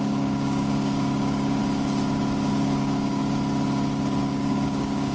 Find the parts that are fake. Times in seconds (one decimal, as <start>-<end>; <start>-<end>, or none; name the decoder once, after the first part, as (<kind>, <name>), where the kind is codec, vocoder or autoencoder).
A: 0.0-1.6 (codec, DAC); 2.5-3.2; 4.2-5.1